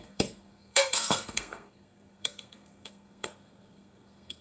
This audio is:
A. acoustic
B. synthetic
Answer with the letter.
B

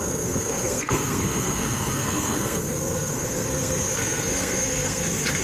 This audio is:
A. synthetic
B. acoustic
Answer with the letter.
A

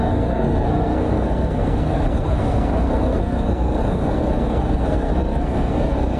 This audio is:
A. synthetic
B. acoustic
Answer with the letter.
A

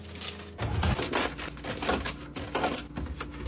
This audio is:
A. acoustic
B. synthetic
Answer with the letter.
A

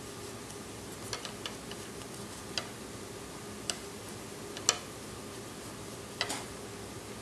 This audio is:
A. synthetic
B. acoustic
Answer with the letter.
B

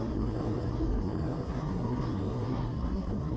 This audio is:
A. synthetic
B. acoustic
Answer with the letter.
A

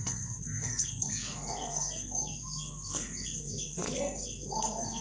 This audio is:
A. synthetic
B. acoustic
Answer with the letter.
A